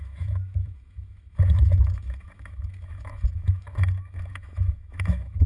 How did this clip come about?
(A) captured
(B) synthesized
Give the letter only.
B